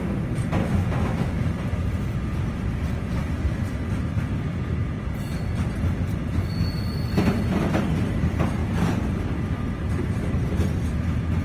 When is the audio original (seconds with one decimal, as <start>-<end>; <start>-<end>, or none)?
0.0-0.6; 1.4-11.4